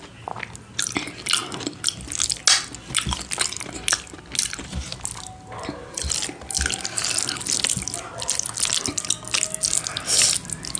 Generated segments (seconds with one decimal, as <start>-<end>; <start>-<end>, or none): none